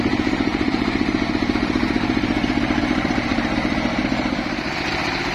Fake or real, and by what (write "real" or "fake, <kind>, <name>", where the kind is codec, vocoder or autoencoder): fake, vocoder, BigVGAN v2